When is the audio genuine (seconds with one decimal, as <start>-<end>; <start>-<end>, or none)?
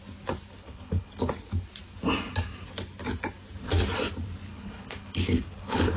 0.0-0.6; 1.3-4.5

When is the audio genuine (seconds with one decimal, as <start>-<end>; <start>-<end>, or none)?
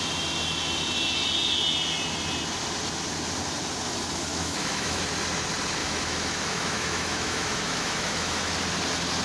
0.0-4.3; 5.0-5.8; 8.5-9.2